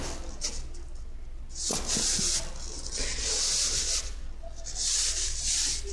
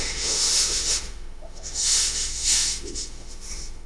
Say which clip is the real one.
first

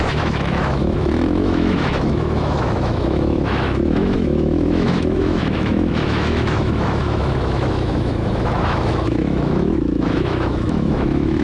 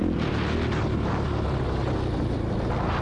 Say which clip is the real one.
second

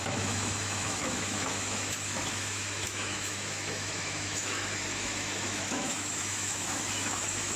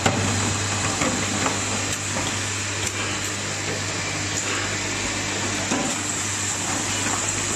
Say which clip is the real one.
second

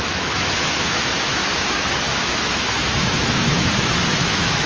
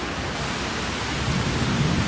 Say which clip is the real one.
second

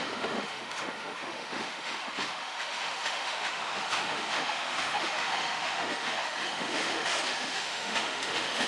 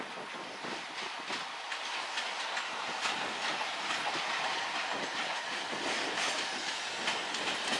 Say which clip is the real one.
second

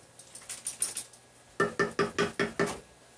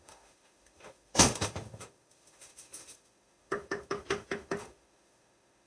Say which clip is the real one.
first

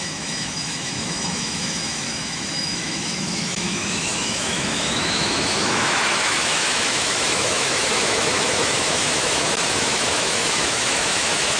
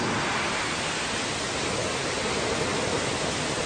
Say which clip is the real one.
second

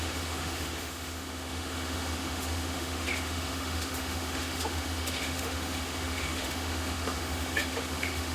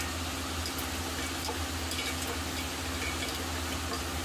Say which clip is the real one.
second